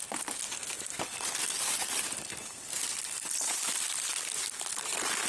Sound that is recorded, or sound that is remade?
recorded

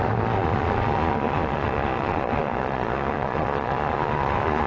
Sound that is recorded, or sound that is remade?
remade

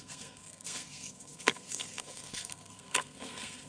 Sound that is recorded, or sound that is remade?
remade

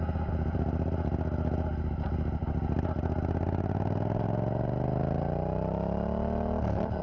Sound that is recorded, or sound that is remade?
recorded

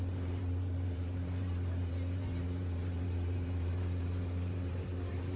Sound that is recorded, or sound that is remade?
remade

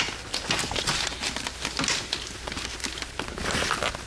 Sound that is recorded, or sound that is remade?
recorded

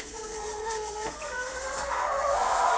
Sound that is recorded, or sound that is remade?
remade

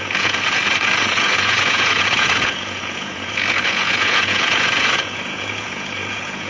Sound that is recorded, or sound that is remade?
remade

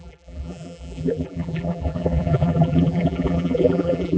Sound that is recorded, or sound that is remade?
remade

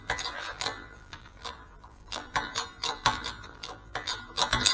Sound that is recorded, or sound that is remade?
remade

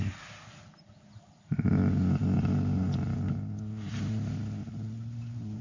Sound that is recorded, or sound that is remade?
recorded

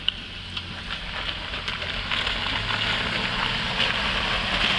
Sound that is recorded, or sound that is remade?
recorded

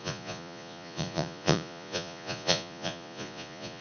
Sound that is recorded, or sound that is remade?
remade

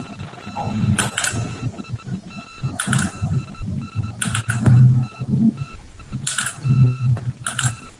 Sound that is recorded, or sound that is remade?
remade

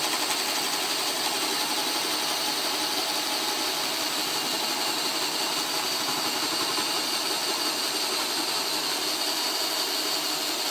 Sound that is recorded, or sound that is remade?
recorded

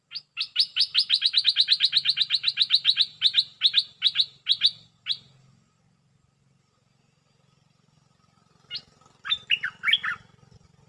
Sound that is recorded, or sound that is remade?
recorded